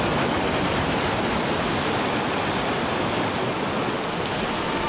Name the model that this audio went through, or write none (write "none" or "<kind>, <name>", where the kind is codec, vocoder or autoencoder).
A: none